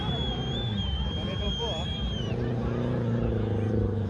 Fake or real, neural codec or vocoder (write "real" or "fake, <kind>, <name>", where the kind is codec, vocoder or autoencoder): fake, vocoder, BigVGAN v2